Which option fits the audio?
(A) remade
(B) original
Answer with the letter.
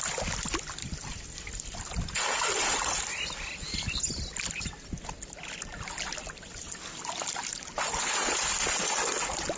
B